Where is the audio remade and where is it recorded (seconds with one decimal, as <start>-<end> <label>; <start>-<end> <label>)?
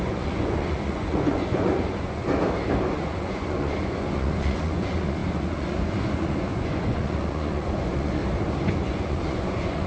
0.0-2.2 remade; 2.2-2.9 recorded; 2.9-8.2 remade; 8.2-8.7 recorded; 8.7-9.9 remade